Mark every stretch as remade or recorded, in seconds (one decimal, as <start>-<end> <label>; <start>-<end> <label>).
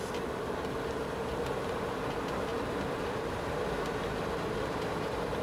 0.0-5.4 recorded